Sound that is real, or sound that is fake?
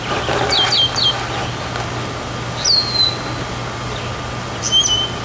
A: real